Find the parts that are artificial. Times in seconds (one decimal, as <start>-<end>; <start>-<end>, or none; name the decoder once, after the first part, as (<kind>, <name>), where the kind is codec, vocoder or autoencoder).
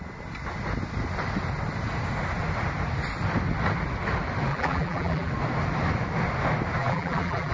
4.5-5.3 (vocoder, BigVGAN v2); 6.8-7.5